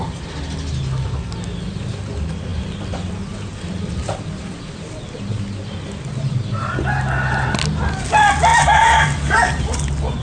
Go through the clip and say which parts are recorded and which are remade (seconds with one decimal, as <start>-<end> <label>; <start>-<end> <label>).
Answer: 0.0-2.5 recorded; 2.5-3.1 remade; 3.1-3.5 recorded; 3.5-7.3 remade; 7.3-8.5 recorded; 8.5-9.6 remade; 9.6-10.2 recorded